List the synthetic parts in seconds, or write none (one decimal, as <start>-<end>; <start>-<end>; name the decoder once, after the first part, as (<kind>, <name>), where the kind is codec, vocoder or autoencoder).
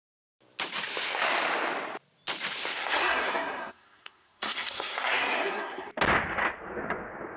2.8-5.9 (codec, SNAC)